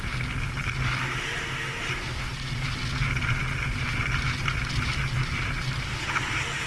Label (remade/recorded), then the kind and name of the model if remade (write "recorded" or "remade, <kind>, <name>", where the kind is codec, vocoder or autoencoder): recorded